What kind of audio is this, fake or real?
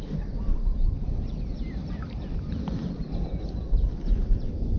real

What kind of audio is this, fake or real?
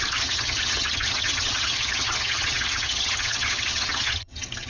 fake